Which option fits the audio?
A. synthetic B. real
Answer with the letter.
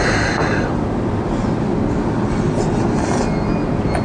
B